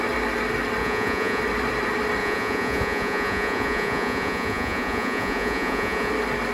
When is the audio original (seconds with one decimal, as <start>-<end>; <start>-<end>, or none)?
0.0-0.8; 1.4-2.2; 6.1-6.5